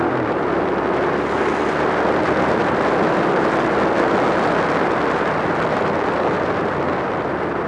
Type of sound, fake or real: real